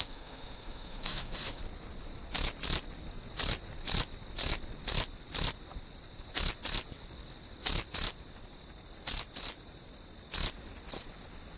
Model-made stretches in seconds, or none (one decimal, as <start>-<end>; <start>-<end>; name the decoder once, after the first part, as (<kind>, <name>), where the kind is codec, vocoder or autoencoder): 0.0-1.6 (autoencoder, DAC-VAE)